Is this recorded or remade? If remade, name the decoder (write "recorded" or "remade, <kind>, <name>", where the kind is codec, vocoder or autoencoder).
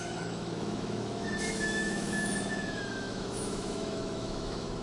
remade, autoencoder, DAC-VAE